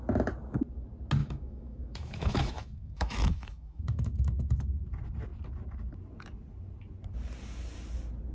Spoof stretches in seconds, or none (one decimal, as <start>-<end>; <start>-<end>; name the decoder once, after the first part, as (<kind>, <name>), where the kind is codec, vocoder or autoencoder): 1.2-4.6 (autoencoder, DAC-VAE)